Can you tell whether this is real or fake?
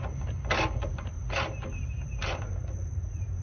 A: fake